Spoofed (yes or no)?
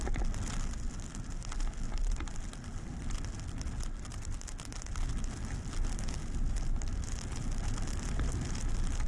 no